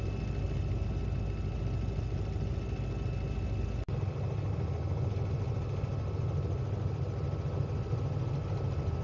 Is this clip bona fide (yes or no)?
yes